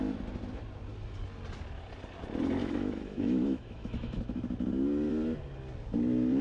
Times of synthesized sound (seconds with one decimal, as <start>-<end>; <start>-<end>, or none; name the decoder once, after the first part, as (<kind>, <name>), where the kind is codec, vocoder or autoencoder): 2.6-4.2 (autoencoder, DAC-VAE)